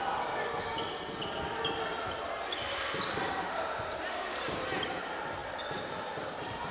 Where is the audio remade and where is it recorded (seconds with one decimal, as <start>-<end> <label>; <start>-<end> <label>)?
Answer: 0.0-5.4 recorded; 5.4-6.7 remade